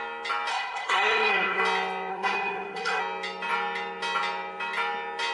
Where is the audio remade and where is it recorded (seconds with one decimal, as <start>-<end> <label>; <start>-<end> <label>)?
0.0-0.5 recorded; 0.5-1.6 remade; 1.6-2.1 recorded; 2.1-3.0 remade; 3.0-5.3 recorded